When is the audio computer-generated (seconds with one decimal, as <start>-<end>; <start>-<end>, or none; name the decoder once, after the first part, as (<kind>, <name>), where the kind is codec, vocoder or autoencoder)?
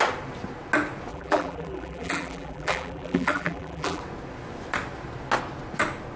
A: 1.1-4.0 (vocoder, BigVGAN v2)